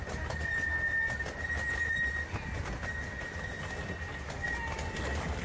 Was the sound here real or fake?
real